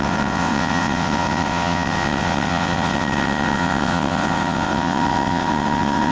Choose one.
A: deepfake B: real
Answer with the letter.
A